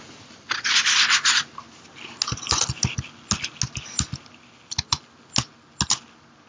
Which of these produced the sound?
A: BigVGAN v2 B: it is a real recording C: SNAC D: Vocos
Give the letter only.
B